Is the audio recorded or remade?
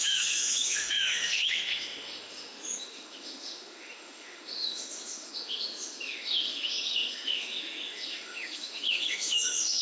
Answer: remade